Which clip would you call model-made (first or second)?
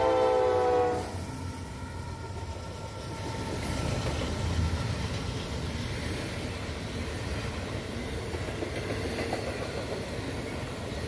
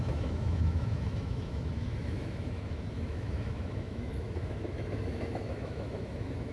second